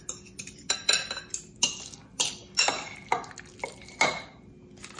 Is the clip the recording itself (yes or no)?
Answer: yes